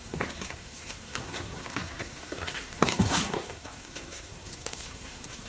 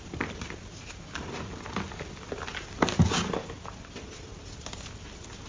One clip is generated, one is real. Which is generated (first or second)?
first